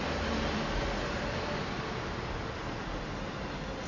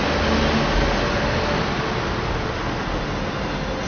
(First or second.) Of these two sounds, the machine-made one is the first